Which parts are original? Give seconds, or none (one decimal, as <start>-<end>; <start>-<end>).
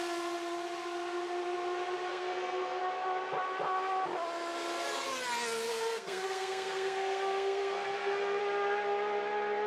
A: 0.0-2.1; 2.8-5.7; 8.4-9.7